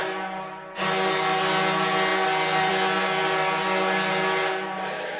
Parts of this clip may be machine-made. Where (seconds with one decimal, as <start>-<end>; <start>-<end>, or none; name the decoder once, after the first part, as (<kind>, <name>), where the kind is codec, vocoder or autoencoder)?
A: none